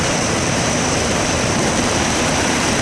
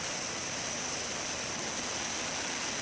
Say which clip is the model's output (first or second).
first